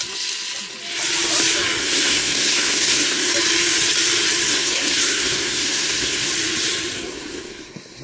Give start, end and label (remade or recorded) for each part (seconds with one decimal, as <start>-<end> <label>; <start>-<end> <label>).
0.0-1.8 recorded; 1.8-3.3 remade; 3.3-4.5 recorded; 4.5-6.3 remade; 6.3-7.1 recorded; 7.1-8.0 remade